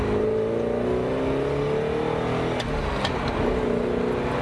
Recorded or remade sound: recorded